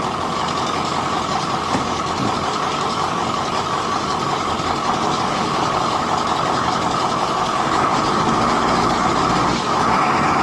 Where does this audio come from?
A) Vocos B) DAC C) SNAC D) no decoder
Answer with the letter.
B